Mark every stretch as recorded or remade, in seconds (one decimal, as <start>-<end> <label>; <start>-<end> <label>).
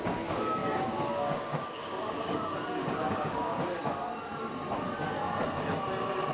0.0-3.8 remade; 3.8-6.3 recorded